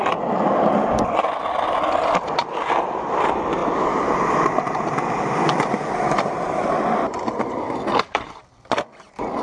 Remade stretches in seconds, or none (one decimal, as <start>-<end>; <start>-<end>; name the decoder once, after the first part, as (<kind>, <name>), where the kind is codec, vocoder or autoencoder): 3.6-6.0 (vocoder, BigVGAN v2)